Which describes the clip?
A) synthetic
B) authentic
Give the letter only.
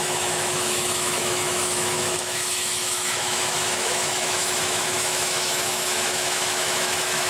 A